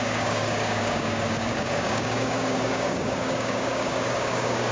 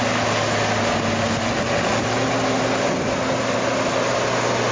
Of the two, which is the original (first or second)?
second